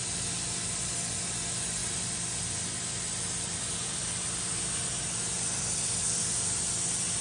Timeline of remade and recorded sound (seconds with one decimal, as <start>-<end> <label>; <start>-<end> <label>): 0.0-7.2 recorded